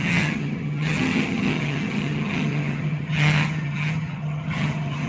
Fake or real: fake